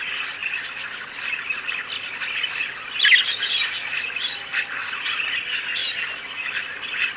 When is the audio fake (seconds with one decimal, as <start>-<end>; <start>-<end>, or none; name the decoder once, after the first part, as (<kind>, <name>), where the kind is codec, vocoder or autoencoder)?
0.4-1.2 (vocoder, BigVGAN v2)